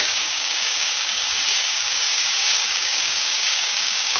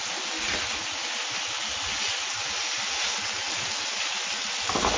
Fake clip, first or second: first